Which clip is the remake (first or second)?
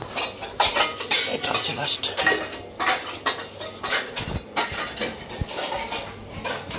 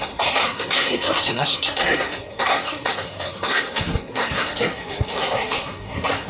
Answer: second